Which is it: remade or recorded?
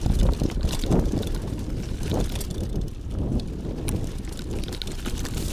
recorded